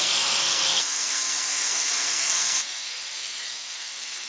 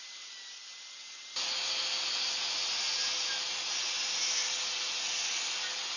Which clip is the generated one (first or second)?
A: first